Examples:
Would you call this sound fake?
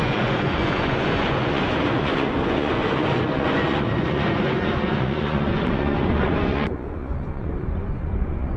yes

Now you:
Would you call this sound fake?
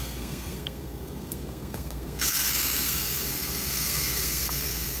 yes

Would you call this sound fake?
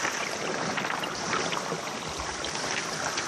no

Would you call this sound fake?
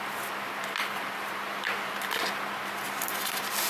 no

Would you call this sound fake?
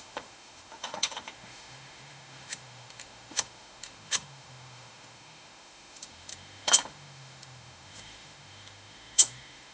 yes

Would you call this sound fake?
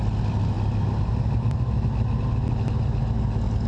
no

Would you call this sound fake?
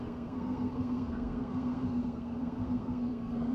yes